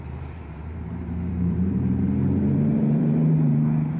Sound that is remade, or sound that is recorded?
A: remade